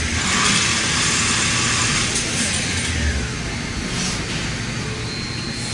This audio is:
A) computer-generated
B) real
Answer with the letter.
B